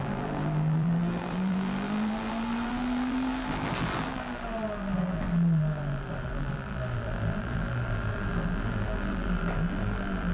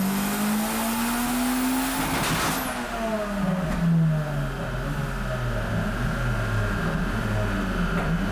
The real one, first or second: second